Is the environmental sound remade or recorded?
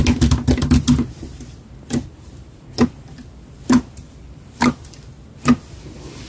recorded